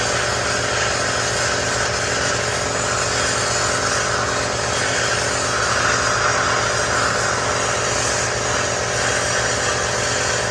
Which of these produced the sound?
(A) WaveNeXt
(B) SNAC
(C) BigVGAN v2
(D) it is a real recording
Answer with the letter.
D